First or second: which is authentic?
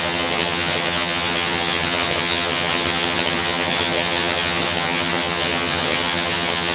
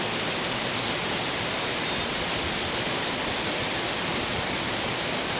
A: second